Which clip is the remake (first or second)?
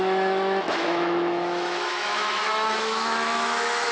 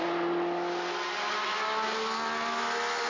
first